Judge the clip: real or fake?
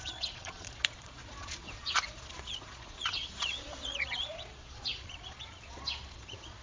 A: fake